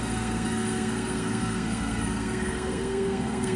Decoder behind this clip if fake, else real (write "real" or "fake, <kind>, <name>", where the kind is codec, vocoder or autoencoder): fake, codec, SNAC